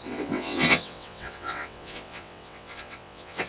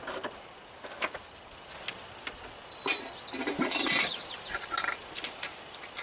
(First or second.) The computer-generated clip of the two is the first